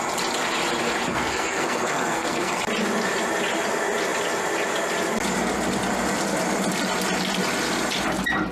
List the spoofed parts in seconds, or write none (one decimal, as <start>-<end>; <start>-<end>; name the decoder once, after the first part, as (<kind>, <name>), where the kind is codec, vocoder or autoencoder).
1.1-2.6 (codec, SNAC)